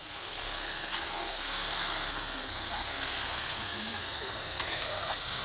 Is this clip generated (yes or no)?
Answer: yes